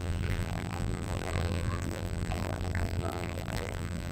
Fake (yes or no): yes